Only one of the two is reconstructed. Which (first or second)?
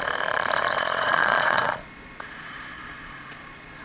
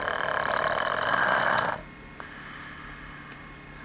first